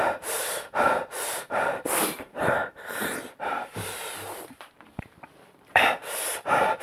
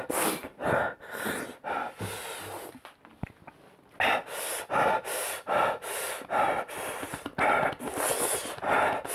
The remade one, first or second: first